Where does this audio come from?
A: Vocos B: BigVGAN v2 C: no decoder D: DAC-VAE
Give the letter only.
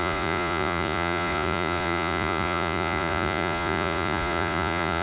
A